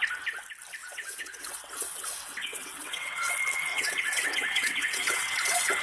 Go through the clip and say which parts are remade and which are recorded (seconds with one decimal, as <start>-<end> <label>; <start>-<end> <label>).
0.0-0.8 recorded; 0.8-3.3 remade; 3.3-3.7 recorded; 3.7-5.8 remade